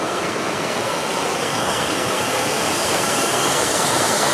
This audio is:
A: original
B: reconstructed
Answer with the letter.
B